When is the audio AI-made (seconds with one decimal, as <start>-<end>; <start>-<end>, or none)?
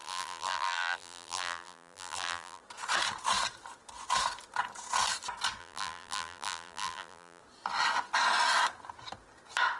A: 0.0-2.6; 5.6-7.4